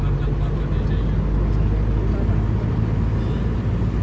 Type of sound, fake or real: real